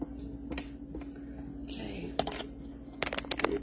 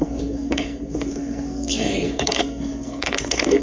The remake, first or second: second